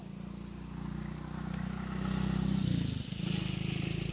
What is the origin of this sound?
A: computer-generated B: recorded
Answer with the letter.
B